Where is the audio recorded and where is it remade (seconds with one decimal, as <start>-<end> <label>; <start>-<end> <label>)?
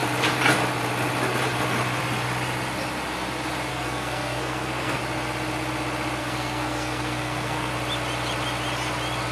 0.0-3.7 recorded; 3.7-5.0 remade; 5.0-6.2 recorded; 6.2-7.7 remade; 7.7-9.3 recorded